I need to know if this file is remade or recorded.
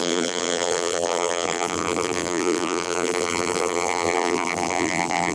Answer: remade